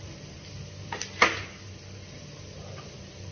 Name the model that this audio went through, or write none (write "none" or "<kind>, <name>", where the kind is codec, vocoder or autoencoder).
none